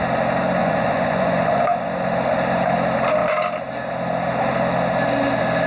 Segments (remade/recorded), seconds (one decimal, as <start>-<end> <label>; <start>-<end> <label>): 0.0-0.6 recorded; 0.6-1.9 remade; 1.9-5.7 recorded